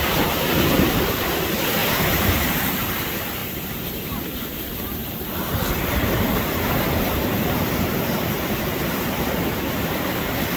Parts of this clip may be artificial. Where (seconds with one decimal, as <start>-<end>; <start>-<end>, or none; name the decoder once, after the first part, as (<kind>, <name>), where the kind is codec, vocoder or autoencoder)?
0.0-3.4 (vocoder, BigVGAN v2); 4.4-5.0; 7.0-10.6